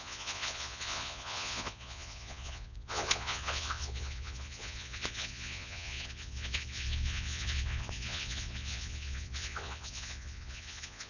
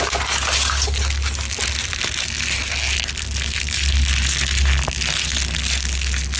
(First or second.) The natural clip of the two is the second